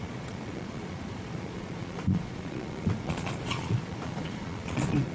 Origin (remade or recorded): remade